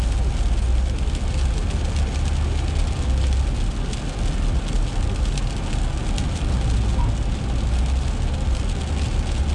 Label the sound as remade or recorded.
recorded